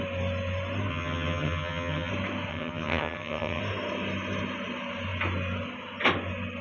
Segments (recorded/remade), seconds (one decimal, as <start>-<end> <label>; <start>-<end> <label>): 0.0-0.9 recorded; 0.9-2.1 remade; 2.1-2.5 recorded; 2.5-3.6 remade; 3.6-6.6 recorded